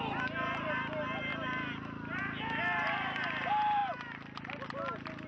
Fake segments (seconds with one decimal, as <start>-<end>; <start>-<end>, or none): none

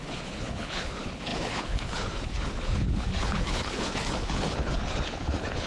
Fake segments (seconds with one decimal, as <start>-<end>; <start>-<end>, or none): 0.0-5.7

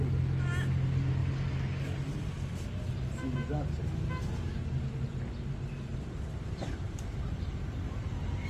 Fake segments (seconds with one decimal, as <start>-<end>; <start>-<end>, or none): 5.9-8.5

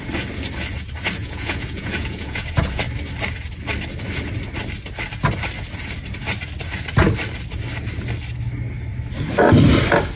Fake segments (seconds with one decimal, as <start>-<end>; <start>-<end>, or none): 1.2-2.8

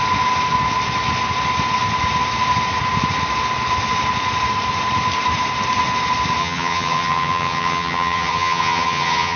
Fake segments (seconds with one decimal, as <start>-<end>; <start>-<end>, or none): 6.4-9.4

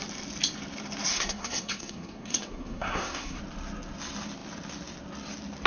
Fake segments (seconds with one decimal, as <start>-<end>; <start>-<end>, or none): 1.1-3.4

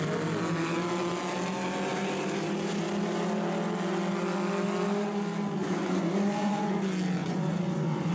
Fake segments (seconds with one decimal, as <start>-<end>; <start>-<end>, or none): 5.6-6.8; 7.2-8.1